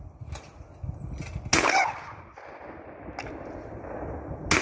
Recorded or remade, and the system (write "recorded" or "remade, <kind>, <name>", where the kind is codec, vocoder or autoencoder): recorded